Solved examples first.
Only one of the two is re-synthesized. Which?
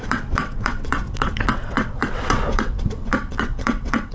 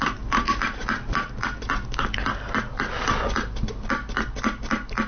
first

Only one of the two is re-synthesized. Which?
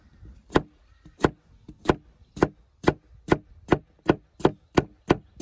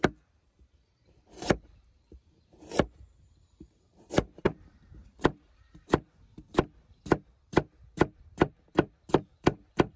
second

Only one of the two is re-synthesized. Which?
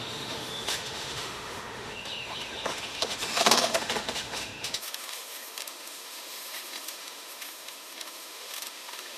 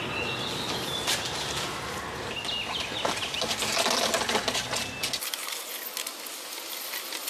first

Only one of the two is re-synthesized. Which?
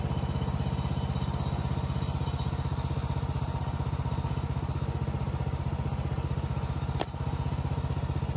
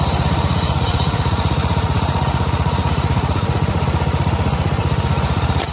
second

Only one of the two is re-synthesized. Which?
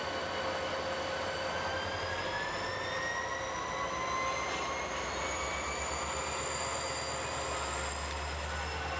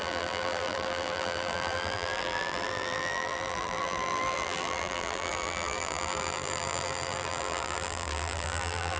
second